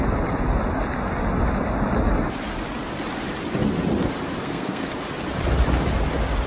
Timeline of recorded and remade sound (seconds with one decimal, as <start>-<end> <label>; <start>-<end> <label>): 0.0-4.4 recorded; 4.4-4.9 remade; 4.9-6.5 recorded